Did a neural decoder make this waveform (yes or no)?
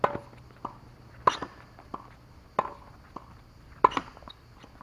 no